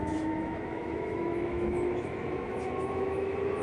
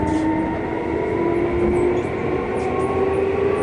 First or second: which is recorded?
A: second